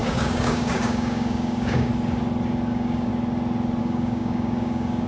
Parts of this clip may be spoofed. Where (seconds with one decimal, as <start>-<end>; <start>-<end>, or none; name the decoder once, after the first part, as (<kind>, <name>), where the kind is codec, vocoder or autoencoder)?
0.0-1.9 (codec, DAC); 2.7-3.1; 3.8-5.1